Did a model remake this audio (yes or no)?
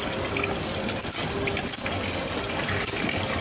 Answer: no